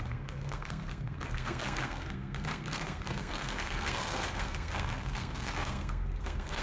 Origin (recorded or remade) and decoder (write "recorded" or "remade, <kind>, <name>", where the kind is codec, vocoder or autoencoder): remade, codec, SNAC